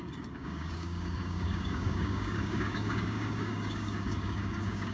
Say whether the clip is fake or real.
fake